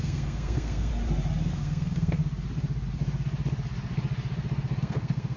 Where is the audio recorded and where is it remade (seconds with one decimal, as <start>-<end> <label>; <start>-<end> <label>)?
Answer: 0.0-0.9 remade; 0.9-1.5 recorded; 1.5-2.2 remade; 2.2-4.8 recorded; 4.8-5.4 remade